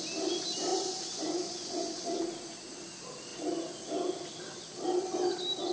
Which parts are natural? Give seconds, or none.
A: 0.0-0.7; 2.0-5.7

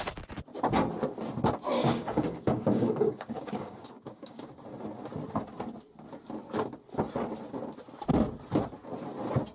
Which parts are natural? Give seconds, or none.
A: 0.0-1.7; 4.4-9.5

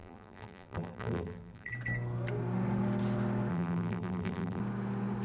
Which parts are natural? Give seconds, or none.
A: 1.7-3.5; 4.6-5.2